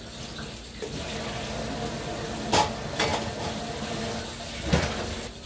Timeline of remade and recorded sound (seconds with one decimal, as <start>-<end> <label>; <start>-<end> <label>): 0.0-5.5 recorded